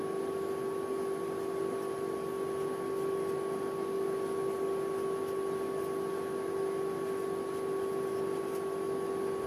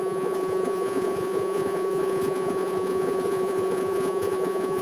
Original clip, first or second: first